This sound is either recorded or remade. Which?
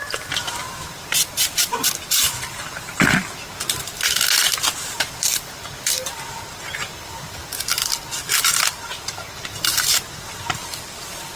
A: recorded